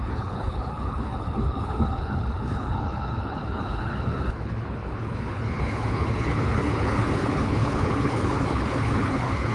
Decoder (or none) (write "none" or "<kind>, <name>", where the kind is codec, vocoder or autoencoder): codec, HILCodec